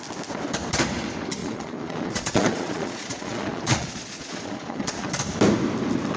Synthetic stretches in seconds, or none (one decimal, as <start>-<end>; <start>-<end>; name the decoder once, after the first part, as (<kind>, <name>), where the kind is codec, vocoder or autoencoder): 1.4-5.1 (vocoder, Vocos)